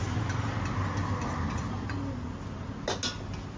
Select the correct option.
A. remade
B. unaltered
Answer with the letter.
B